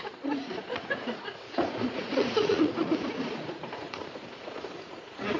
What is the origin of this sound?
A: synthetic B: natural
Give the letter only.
A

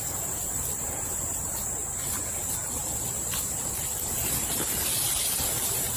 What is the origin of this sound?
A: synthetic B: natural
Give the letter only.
A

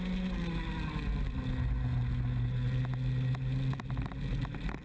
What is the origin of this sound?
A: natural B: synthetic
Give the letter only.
A